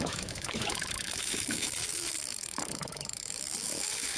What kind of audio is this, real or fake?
fake